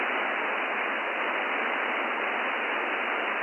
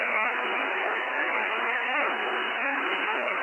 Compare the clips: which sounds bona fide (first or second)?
first